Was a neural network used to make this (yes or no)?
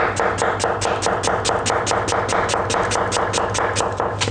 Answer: no